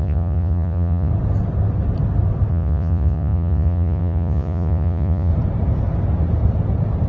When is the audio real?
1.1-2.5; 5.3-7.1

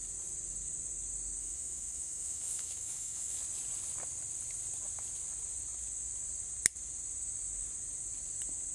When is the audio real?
0.0-1.4; 3.4-8.7

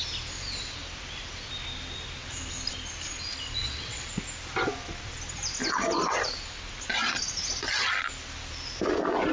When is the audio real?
0.0-3.6; 4.1-9.3

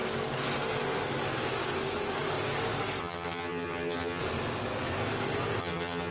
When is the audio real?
0.0-3.0; 4.2-5.6

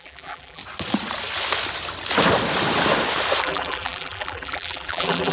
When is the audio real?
0.6-3.4